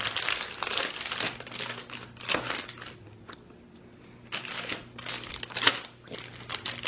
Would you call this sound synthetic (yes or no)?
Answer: no